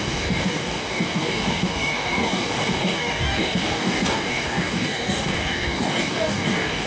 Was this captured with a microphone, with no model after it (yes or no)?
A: no